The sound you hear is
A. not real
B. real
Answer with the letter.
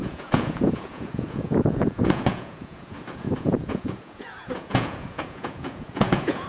A